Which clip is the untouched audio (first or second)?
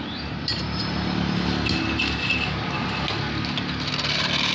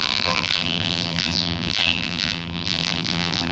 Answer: first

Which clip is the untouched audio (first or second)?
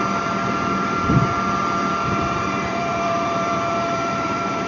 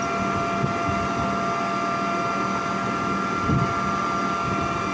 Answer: second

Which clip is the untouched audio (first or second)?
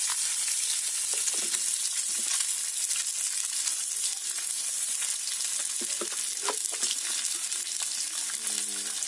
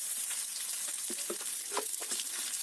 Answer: first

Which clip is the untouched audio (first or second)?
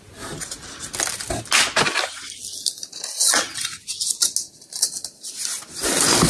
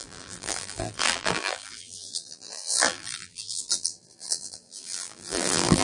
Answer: first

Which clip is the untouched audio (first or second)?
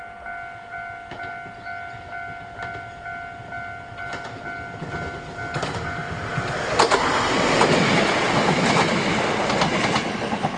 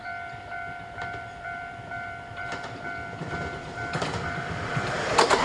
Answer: first